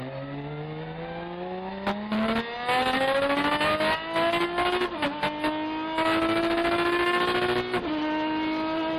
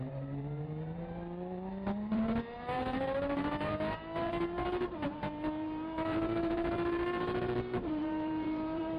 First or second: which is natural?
first